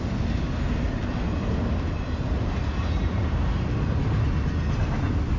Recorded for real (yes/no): yes